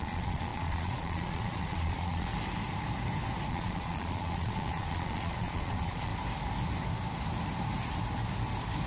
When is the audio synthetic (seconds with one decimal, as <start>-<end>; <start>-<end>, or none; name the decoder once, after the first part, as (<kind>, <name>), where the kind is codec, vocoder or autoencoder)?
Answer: 0.0-2.3 (vocoder, Vocos); 3.5-6.1